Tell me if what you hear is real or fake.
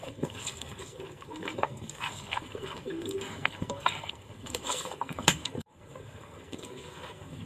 fake